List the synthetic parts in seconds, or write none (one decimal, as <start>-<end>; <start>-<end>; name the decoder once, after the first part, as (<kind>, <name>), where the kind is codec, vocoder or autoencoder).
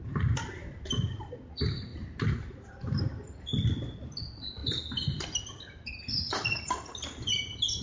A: 0.6-1.3 (vocoder, BigVGAN v2); 1.9-3.5; 4.6-5.5